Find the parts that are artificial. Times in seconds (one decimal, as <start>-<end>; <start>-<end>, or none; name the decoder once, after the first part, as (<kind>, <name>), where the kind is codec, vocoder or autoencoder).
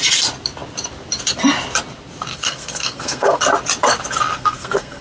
2.3-3.4 (codec, SNAC); 4.3-5.0